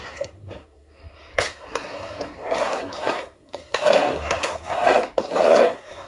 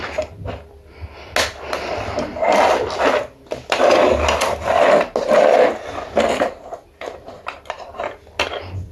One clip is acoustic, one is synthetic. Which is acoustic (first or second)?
second